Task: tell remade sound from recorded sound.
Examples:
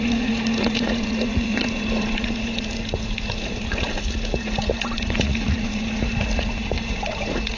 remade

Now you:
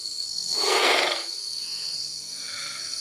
remade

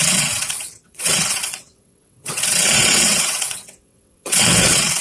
remade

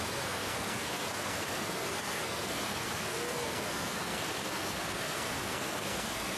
remade